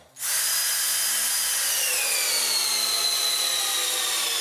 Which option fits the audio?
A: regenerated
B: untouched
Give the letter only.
B